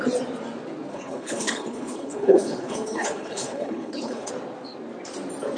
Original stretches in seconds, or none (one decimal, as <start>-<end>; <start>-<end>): 0.0-0.9; 4.3-5.6